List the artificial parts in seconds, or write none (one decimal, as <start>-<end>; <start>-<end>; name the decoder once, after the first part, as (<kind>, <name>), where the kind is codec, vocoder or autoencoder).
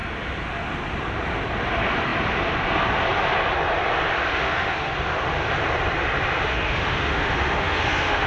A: 4.3-4.9 (autoencoder, DAC-VAE); 6.5-8.3